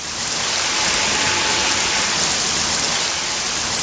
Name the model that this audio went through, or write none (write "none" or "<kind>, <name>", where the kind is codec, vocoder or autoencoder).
none